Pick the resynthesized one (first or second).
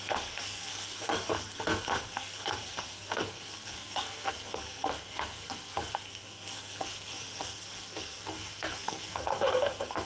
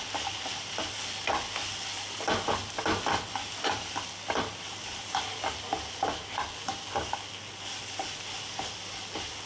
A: first